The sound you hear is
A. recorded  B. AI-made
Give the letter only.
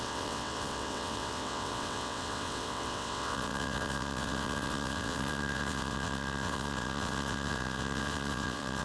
B